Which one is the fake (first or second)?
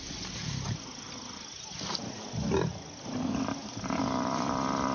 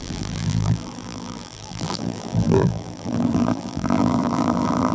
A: second